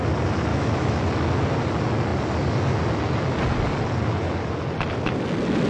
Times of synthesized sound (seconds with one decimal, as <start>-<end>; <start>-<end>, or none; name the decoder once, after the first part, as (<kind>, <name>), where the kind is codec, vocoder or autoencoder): 0.5-1.0 (autoencoder, DAC-VAE)